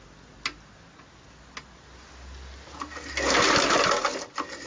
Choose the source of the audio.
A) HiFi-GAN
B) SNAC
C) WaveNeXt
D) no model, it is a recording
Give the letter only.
D